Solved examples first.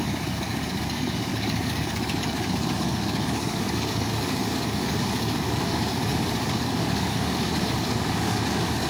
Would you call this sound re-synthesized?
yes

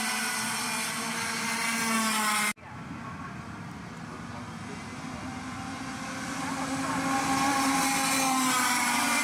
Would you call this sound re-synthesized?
no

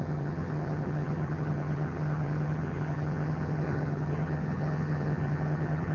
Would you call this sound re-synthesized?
yes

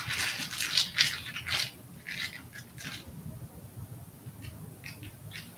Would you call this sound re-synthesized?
no